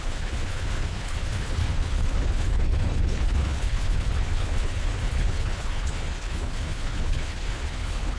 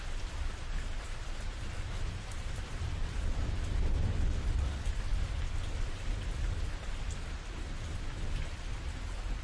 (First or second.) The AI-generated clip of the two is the first